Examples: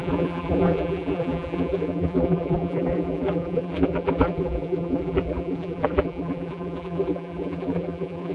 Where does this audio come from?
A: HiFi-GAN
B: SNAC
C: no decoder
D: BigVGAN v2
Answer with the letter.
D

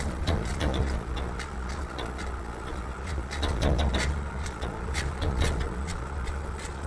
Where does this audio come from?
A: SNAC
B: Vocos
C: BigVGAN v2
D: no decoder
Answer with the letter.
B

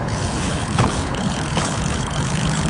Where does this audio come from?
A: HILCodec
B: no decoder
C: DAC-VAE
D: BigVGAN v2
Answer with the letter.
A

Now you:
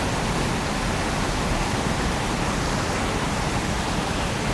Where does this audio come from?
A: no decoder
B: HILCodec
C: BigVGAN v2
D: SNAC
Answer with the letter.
A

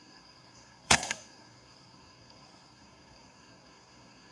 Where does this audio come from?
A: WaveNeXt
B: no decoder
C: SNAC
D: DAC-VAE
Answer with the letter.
C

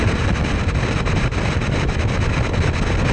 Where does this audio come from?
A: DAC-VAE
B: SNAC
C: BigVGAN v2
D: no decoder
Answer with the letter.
D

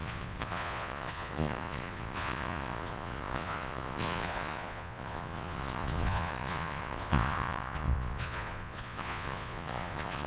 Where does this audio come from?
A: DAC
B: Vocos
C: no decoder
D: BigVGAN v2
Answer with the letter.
B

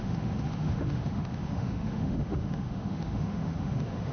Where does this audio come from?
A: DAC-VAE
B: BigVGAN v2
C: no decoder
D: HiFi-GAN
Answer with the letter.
A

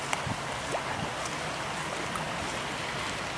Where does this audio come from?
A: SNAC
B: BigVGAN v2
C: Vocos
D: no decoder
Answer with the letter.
D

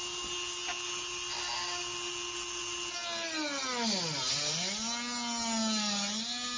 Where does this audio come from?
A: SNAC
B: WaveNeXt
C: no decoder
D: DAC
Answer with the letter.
C